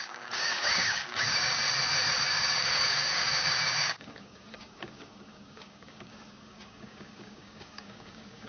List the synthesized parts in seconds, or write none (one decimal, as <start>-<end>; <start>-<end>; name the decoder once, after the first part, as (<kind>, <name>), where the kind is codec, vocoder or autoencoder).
0.0-1.6 (codec, DAC); 2.2-8.5